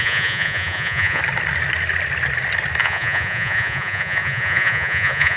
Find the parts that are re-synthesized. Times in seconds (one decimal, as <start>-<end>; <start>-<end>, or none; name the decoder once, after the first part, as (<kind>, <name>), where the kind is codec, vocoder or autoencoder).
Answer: 0.0-1.2 (vocoder, Vocos); 2.8-5.4